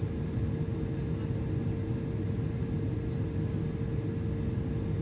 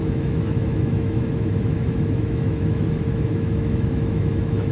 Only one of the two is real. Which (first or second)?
first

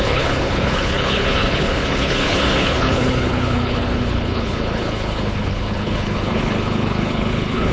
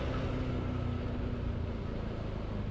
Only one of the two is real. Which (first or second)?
second